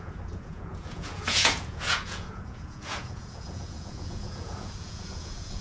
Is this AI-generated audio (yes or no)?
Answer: yes